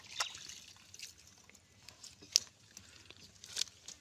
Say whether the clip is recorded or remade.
recorded